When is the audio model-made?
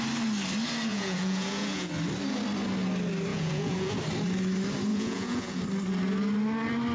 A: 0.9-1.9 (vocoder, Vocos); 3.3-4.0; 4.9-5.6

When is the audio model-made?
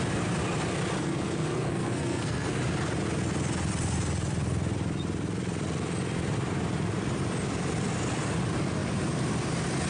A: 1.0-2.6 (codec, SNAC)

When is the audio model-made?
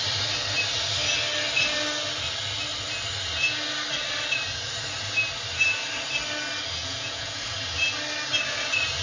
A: 6.8-7.4 (vocoder, Vocos)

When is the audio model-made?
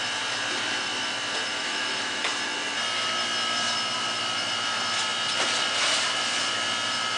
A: 1.5-2.3 (autoencoder, DAC-VAE)